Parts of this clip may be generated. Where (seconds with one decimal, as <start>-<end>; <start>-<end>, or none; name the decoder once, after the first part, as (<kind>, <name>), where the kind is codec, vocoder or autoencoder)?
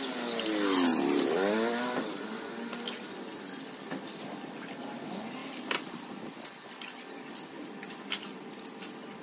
0.9-2.2 (vocoder, BigVGAN v2); 5.4-6.1